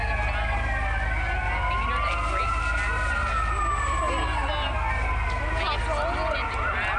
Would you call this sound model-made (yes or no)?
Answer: no